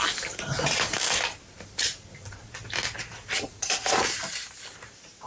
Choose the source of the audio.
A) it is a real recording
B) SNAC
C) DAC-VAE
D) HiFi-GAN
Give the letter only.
A